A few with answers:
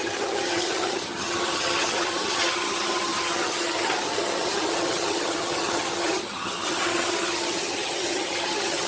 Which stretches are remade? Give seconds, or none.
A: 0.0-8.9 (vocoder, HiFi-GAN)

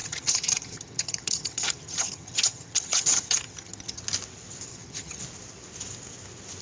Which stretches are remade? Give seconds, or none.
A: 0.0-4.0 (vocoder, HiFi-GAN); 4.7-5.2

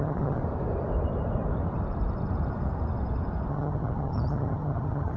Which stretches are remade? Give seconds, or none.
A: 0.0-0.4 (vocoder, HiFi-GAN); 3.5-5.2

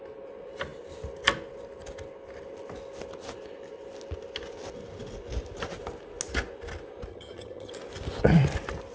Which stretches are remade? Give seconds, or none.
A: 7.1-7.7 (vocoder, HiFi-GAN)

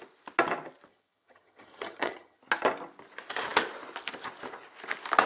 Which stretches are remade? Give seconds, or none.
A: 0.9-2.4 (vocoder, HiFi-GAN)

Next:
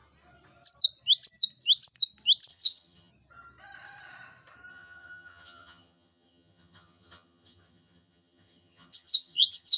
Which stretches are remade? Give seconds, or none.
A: 2.5-3.1 (vocoder, HiFi-GAN); 4.7-9.8

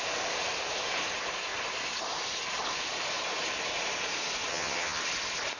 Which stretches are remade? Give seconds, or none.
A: 4.5-5.0 (vocoder, HiFi-GAN)

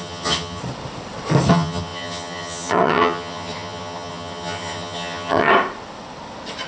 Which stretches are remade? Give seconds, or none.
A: 0.0-0.6 (vocoder, HiFi-GAN); 1.5-5.5